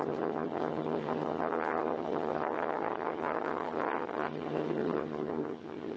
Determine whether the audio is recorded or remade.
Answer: remade